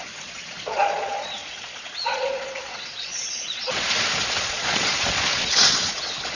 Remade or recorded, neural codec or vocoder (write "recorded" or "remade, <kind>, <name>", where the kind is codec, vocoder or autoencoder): remade, vocoder, Vocos